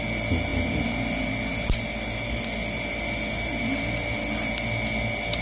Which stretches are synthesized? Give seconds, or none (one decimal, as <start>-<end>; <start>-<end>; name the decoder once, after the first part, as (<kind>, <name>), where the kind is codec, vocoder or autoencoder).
none